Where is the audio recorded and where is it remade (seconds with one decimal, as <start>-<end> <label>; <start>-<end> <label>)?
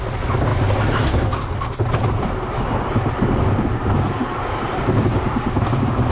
0.0-6.1 recorded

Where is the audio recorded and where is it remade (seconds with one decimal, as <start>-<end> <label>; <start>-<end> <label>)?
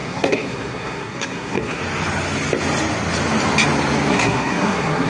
0.0-1.8 remade; 1.8-4.1 recorded; 4.1-5.1 remade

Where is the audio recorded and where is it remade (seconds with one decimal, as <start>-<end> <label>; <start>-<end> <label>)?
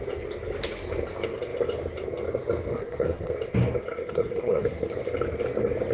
0.0-2.7 recorded; 2.7-3.3 remade; 3.3-3.9 recorded; 3.9-4.9 remade; 4.9-5.9 recorded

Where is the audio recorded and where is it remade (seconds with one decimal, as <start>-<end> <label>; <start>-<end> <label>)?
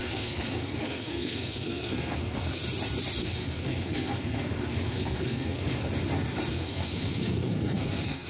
0.0-2.6 remade; 2.6-3.2 recorded; 3.2-5.8 remade; 5.8-6.5 recorded; 6.5-8.3 remade